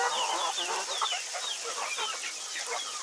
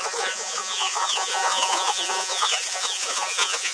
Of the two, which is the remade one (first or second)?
second